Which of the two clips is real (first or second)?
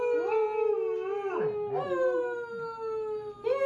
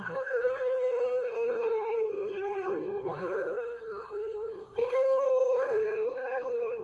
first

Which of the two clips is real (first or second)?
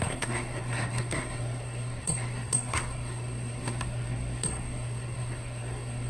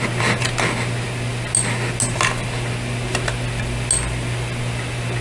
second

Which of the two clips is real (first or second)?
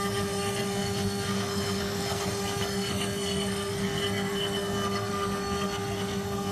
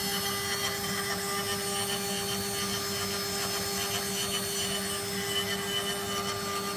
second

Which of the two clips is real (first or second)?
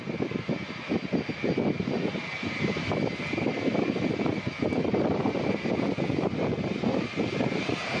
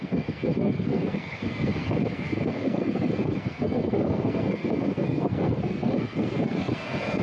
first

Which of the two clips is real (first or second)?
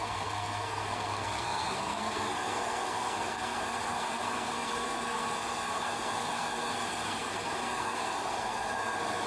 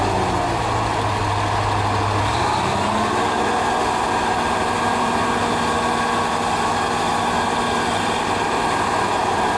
second